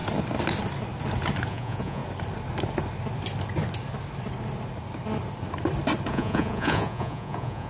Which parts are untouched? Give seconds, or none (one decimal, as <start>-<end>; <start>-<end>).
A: 0.0-1.5; 2.0-6.1